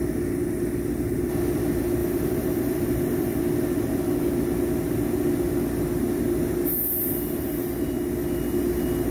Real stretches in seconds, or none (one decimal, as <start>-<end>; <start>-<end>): 0.0-2.0; 3.4-9.1